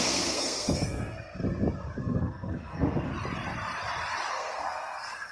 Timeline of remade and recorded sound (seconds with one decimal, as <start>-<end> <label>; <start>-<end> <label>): 0.0-1.4 remade; 1.4-2.0 recorded; 2.0-3.1 remade; 3.1-4.3 recorded; 4.3-5.3 remade